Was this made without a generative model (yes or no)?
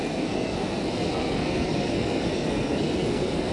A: no